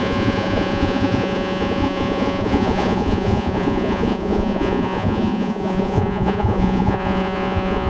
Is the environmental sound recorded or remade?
remade